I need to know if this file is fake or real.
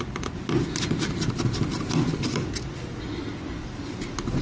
real